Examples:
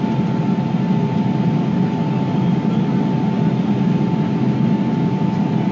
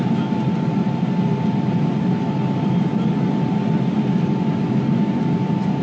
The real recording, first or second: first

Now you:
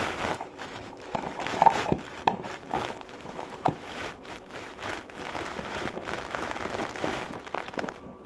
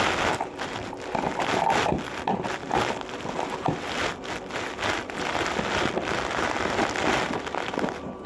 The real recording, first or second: second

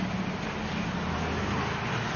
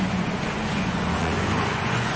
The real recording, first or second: first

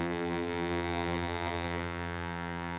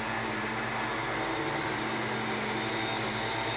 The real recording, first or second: second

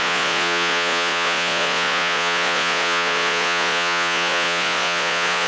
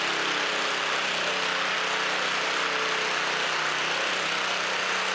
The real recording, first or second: second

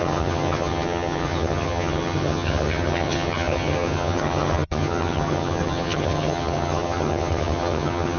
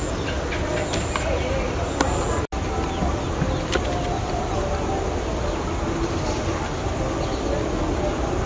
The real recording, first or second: second